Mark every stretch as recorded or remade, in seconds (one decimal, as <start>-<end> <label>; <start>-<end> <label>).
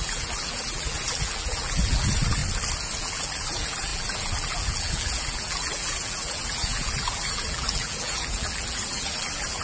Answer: 0.0-2.4 remade; 2.4-3.0 recorded; 3.0-9.6 remade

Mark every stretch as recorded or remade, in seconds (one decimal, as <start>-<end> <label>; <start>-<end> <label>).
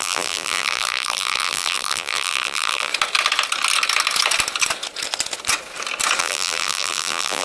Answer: 0.0-2.9 remade; 2.9-6.2 recorded; 6.2-7.4 remade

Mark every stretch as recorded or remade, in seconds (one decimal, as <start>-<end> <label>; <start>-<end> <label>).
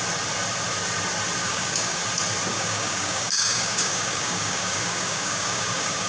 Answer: 0.0-1.4 recorded; 1.4-2.0 remade; 2.0-2.5 recorded; 2.5-6.1 remade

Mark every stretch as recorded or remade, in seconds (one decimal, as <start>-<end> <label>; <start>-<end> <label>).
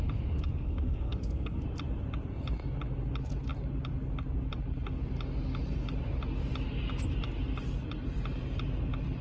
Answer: 0.0-0.5 recorded; 0.5-1.6 remade; 1.6-9.2 recorded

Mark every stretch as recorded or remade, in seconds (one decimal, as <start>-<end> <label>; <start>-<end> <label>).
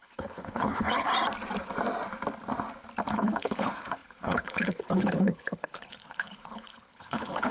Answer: 0.0-1.1 remade; 1.1-3.1 recorded; 3.1-7.5 remade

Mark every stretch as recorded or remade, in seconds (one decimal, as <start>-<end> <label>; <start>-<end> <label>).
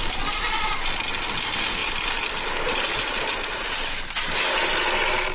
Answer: 0.0-5.3 recorded